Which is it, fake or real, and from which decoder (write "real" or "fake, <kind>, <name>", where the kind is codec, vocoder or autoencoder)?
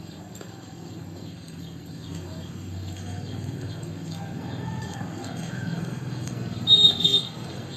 fake, codec, SNAC